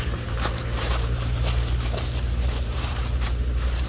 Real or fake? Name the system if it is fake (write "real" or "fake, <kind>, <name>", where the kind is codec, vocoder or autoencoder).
fake, vocoder, BigVGAN v2